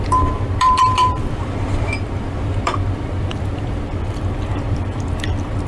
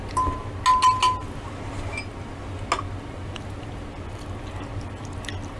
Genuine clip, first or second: second